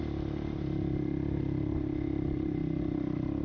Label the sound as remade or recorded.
recorded